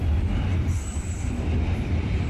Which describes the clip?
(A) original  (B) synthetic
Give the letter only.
A